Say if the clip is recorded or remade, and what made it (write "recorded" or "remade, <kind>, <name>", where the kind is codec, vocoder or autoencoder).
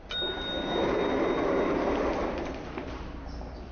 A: recorded